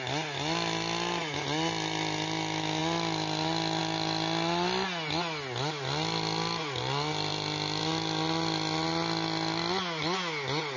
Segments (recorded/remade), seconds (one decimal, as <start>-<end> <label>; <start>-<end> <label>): 0.0-10.8 recorded